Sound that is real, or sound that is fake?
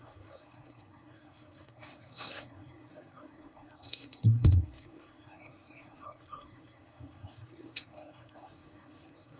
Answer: fake